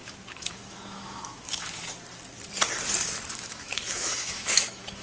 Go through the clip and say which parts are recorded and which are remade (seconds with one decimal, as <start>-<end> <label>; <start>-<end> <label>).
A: 0.0-1.8 remade; 1.8-3.3 recorded; 3.3-5.0 remade